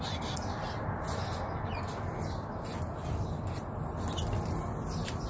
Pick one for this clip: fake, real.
real